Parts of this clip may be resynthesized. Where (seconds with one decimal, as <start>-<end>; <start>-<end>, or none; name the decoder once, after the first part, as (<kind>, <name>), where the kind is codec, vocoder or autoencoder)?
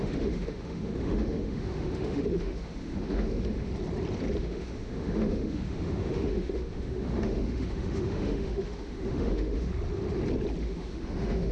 0.0-3.7 (autoencoder, DAC-VAE); 4.4-9.7; 10.6-11.5